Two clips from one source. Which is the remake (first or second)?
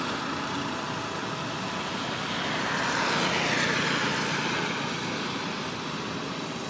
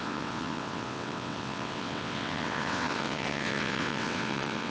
second